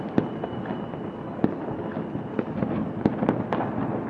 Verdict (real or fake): real